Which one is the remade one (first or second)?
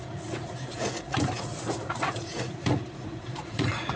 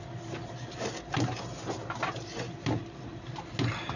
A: first